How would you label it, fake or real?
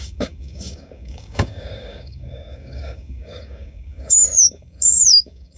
fake